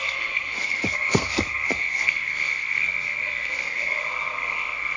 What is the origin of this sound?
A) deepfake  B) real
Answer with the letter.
A